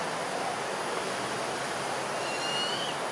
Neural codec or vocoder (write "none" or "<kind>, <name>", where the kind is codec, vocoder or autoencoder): none